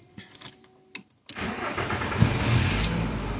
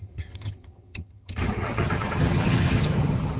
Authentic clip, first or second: first